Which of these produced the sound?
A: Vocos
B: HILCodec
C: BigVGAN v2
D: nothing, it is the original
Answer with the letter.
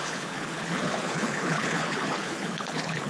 B